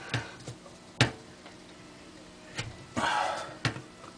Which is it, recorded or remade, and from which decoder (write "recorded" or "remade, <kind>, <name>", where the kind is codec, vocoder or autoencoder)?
recorded